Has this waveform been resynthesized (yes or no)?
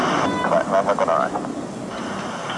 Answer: no